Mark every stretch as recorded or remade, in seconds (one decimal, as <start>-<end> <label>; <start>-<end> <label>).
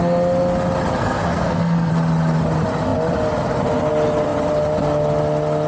0.0-1.0 recorded; 1.0-1.9 remade; 1.9-5.7 recorded